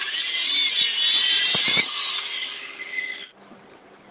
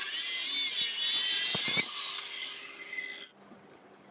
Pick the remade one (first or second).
first